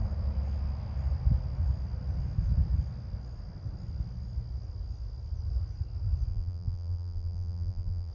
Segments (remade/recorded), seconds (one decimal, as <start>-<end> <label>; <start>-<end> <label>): 0.0-6.3 recorded; 6.3-8.1 remade